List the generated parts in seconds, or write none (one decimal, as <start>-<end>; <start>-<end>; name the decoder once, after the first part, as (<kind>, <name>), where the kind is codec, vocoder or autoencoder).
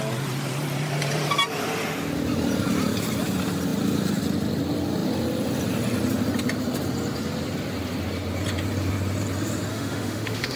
9.7-10.6 (autoencoder, DAC-VAE)